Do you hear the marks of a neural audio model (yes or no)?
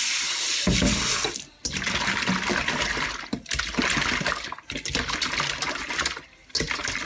no